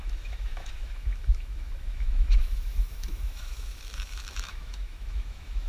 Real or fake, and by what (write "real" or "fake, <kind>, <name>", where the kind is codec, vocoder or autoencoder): fake, autoencoder, DAC-VAE